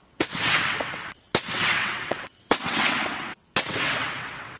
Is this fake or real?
fake